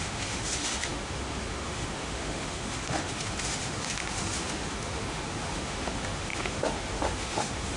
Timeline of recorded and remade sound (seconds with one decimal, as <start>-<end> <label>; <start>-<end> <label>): 0.0-7.8 remade